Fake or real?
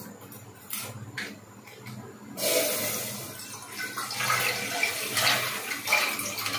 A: real